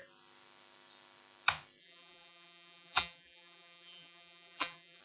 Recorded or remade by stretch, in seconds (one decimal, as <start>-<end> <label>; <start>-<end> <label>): 0.0-1.8 recorded; 1.8-5.0 remade